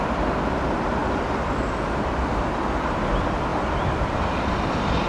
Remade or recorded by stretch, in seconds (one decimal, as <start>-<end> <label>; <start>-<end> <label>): 0.0-1.0 recorded; 1.0-1.6 remade; 1.6-3.5 recorded; 3.5-4.4 remade; 4.4-5.1 recorded